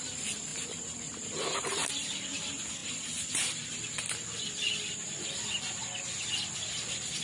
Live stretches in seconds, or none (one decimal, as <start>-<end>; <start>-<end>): 0.0-0.5; 1.9-7.2